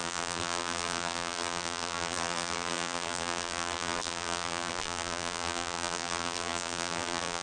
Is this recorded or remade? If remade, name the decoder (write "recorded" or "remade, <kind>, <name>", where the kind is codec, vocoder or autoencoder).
remade, vocoder, BigVGAN v2